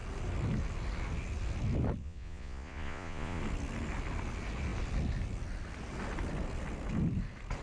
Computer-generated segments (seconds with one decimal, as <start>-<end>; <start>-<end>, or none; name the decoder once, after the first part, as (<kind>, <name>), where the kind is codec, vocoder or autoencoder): 2.0-3.4 (vocoder, Vocos)